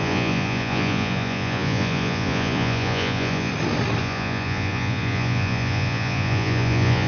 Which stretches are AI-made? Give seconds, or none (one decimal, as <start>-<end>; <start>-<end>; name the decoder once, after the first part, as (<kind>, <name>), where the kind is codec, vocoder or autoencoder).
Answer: 0.0-3.5 (vocoder, Vocos); 4.0-7.1